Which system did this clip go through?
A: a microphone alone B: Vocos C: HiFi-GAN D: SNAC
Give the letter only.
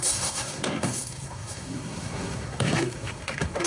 D